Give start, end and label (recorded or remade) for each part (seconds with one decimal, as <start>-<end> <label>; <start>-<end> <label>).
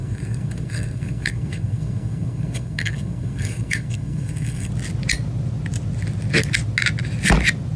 0.0-4.7 remade; 4.7-7.8 recorded